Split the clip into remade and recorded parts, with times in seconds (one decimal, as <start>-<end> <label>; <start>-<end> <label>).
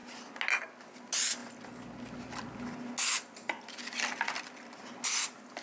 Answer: 0.0-5.6 recorded